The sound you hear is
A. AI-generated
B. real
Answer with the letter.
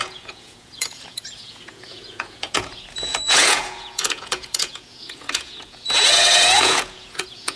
A